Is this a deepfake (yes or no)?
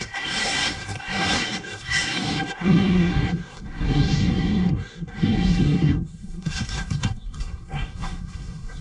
yes